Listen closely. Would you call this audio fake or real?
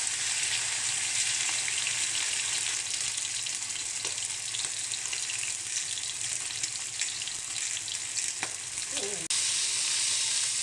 real